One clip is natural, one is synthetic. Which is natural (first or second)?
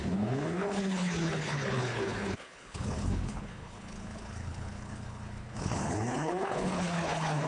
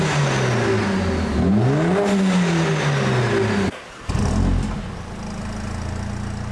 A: second